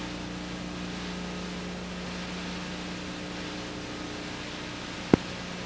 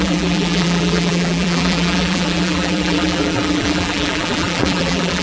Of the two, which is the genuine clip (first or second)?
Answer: first